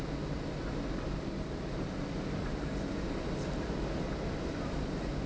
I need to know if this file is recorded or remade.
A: recorded